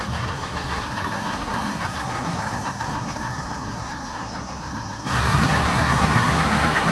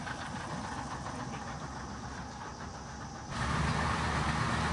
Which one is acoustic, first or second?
second